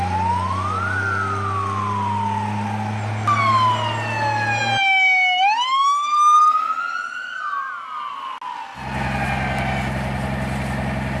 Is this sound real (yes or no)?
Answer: yes